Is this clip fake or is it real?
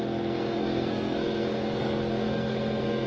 fake